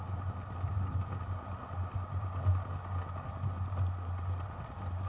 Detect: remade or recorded recorded